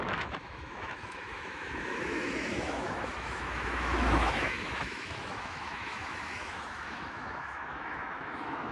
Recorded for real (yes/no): no